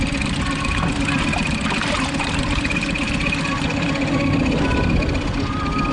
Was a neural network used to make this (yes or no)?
no